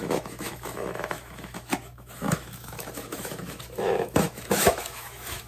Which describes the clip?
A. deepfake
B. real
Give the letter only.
A